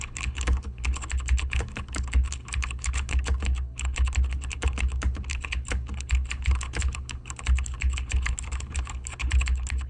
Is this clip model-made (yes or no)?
yes